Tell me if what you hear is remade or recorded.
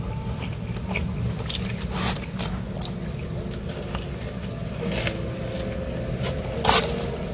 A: recorded